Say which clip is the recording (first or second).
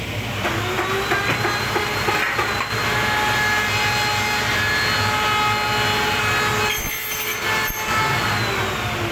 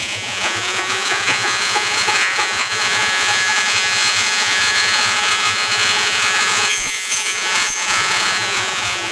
first